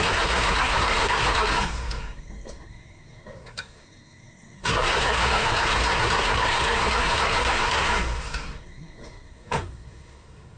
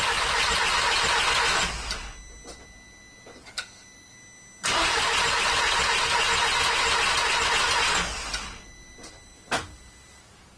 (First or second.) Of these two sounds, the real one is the second